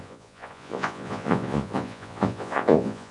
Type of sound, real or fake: fake